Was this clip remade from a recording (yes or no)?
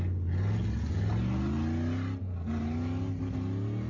no